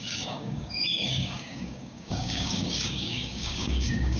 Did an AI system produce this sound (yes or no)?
yes